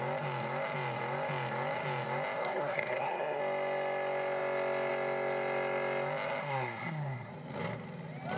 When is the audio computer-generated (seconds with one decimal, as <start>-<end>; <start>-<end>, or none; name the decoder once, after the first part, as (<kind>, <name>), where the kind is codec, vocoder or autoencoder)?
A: 2.4-3.4 (codec, SNAC); 6.4-7.3